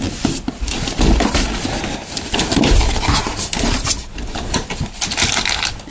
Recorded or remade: recorded